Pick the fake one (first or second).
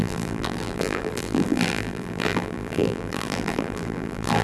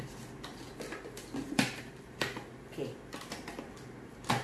first